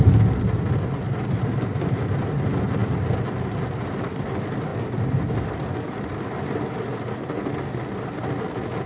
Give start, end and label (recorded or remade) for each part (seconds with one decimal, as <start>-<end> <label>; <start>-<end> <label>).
0.0-8.9 recorded